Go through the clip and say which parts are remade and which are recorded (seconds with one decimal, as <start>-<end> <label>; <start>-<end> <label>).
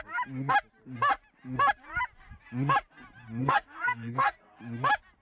0.0-3.4 recorded; 3.4-4.5 remade; 4.5-5.2 recorded